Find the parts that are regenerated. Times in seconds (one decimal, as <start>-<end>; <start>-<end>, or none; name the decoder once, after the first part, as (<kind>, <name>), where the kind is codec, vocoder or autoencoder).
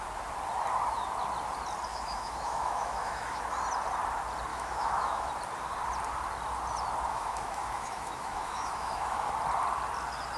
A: 1.9-3.4 (autoencoder, DAC-VAE); 4.5-5.3; 7.1-9.3